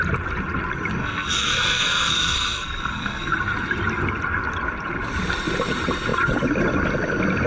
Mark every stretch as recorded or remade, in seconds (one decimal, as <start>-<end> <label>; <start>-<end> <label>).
0.0-1.0 recorded; 1.0-3.3 remade; 3.3-7.5 recorded